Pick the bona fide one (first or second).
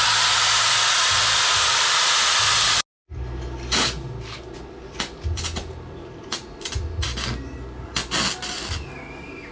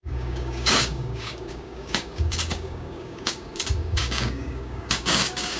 first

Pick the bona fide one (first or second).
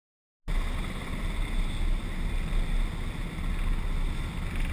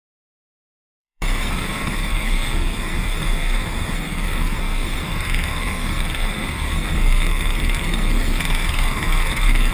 first